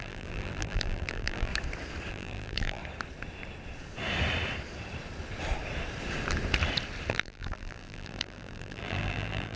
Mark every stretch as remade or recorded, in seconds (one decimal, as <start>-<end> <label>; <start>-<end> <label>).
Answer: 0.0-1.5 remade; 1.5-2.1 recorded; 2.1-2.8 remade; 2.8-7.1 recorded; 7.1-9.6 remade